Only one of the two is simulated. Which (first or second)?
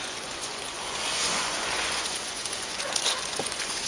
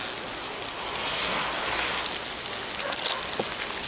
first